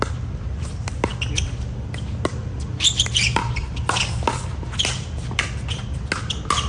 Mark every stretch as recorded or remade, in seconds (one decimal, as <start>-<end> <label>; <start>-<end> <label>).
0.0-6.7 recorded